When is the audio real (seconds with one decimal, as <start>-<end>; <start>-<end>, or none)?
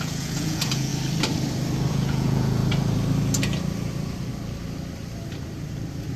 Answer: 0.9-1.9; 2.6-6.2